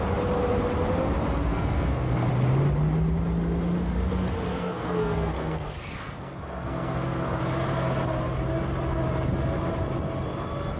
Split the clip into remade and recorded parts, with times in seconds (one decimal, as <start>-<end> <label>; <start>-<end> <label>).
0.0-1.5 recorded; 1.5-2.3 remade; 2.3-4.5 recorded; 4.5-7.4 remade; 7.4-10.8 recorded